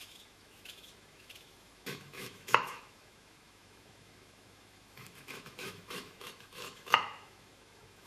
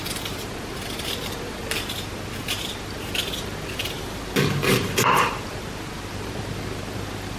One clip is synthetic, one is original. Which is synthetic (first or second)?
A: first